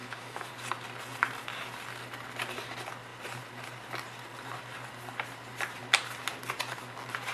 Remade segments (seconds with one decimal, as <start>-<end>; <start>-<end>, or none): 0.0-0.5